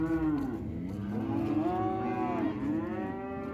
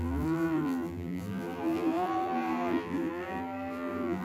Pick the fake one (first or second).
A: second